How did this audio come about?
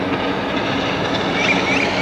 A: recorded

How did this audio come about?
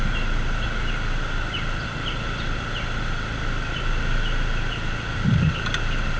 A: recorded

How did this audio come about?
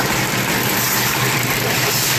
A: remade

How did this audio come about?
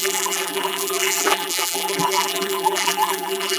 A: remade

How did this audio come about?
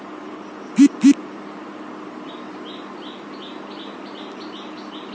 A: recorded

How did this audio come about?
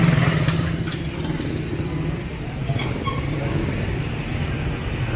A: recorded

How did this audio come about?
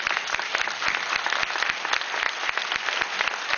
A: recorded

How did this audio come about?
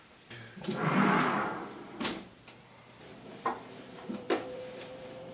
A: remade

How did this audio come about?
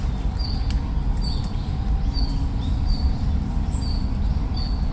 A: recorded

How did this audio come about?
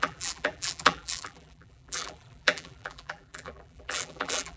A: remade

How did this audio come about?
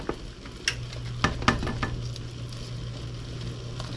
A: recorded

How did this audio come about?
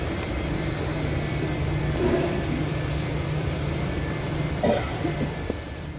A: remade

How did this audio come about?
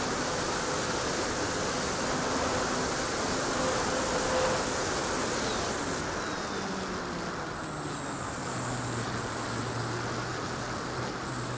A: recorded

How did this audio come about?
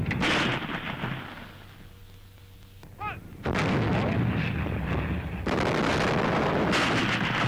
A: recorded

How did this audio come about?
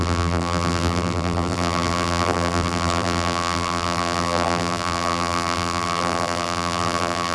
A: remade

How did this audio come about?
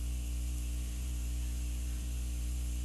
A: remade